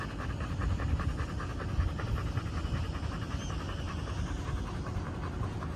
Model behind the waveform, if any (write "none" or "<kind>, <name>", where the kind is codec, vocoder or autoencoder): none